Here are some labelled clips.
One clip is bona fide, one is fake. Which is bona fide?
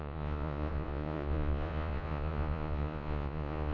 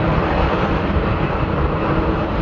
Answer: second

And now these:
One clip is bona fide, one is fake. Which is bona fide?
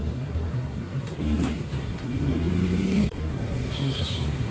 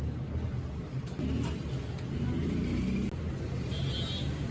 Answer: second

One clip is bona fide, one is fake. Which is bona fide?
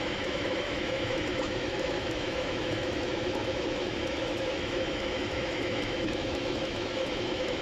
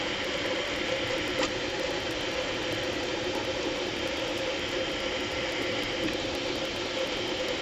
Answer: second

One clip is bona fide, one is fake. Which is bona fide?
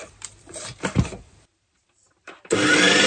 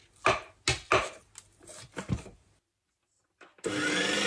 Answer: second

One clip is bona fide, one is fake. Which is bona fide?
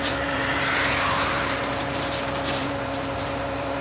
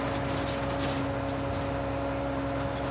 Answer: second